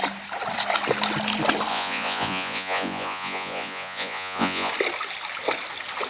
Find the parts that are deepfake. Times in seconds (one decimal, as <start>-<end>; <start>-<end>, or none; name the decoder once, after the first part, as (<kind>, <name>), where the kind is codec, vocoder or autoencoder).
1.7-4.7 (vocoder, Vocos)